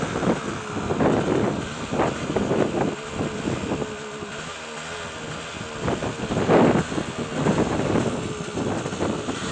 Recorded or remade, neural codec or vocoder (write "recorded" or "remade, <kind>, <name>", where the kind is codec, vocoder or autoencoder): recorded